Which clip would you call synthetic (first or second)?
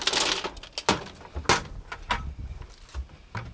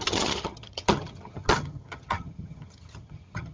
second